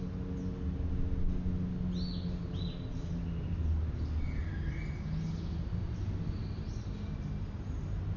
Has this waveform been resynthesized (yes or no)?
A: no